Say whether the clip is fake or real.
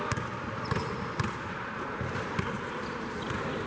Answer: real